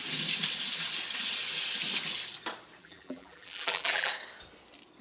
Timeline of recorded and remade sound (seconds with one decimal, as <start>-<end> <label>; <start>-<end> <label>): 0.0-2.8 recorded; 2.8-4.1 remade; 4.1-5.0 recorded